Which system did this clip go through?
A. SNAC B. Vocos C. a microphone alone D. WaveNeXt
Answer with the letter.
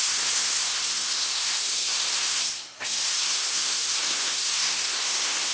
A